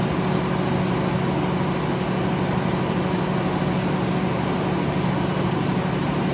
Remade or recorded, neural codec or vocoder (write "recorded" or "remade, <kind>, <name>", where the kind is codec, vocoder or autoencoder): recorded